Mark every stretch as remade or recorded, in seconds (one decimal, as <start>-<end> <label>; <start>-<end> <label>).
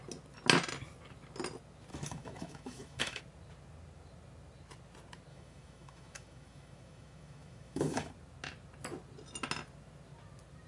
0.0-1.9 recorded; 1.9-3.2 remade; 3.2-5.3 recorded; 5.3-8.1 remade; 8.1-10.7 recorded